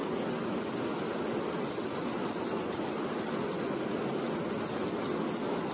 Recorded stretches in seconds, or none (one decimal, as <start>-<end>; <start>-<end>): none